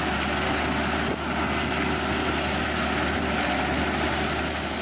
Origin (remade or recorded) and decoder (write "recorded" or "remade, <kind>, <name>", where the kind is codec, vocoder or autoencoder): recorded